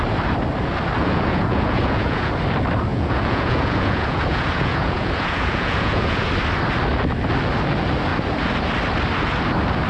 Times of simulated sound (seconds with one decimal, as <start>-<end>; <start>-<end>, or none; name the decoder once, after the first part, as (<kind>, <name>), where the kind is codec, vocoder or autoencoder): 1.0-2.3 (vocoder, Vocos); 2.9-6.3